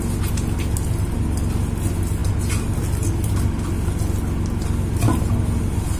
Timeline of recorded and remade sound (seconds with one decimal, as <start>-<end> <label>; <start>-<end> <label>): 0.0-6.0 recorded